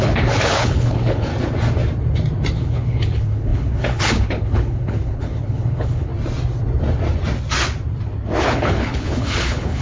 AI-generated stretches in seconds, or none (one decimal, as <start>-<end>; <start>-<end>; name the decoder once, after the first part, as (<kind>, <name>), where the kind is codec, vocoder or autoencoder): 0.0-1.3 (codec, HILCodec); 2.5-6.1; 8.4-9.8